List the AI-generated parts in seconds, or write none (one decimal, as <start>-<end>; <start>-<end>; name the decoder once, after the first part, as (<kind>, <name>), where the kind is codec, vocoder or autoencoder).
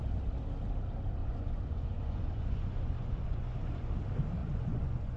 1.2-3.9 (vocoder, Vocos); 4.4-5.2